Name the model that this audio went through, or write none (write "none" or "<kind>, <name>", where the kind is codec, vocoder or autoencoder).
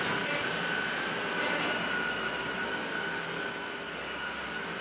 none